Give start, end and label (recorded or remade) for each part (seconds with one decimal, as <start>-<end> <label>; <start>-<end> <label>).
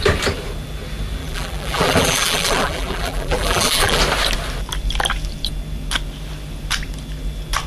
0.0-1.2 recorded; 1.2-4.0 remade; 4.0-7.7 recorded